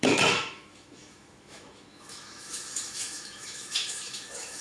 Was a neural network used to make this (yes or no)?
yes